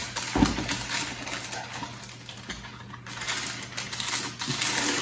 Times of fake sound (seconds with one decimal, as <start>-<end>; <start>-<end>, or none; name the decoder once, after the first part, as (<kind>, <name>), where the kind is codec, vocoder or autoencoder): none